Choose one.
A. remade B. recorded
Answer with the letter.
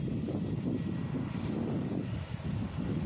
B